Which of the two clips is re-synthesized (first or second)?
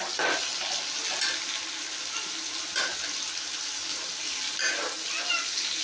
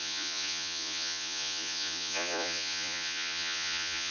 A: second